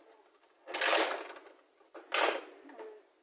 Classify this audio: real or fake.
real